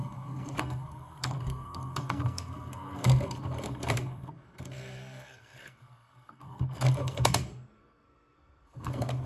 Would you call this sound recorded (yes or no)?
no